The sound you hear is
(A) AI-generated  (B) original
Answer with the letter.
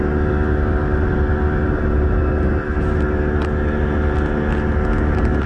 B